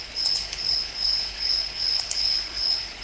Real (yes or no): no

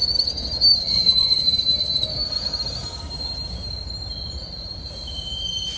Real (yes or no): no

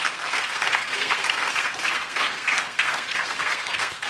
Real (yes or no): no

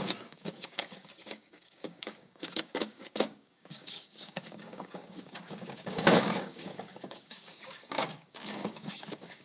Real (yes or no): no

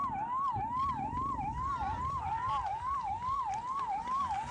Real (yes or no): yes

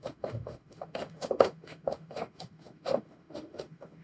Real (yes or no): no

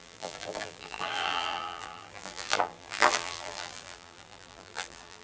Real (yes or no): no